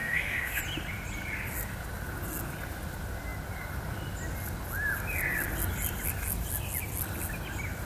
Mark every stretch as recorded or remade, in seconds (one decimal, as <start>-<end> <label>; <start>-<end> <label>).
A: 0.0-0.6 remade; 0.6-7.8 recorded